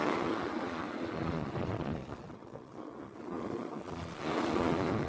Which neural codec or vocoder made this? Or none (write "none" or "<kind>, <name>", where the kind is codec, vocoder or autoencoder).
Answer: vocoder, Vocos